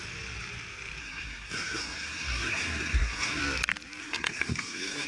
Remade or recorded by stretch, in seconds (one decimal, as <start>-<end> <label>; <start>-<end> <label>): 0.0-1.0 recorded; 1.0-3.4 remade; 3.4-4.0 recorded; 4.0-5.1 remade